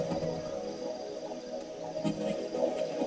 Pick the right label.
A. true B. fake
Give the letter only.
A